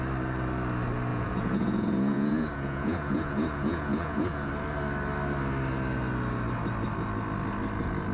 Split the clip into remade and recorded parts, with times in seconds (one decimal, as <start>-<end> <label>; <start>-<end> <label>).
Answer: 0.0-1.1 recorded; 1.1-4.5 remade; 4.5-8.1 recorded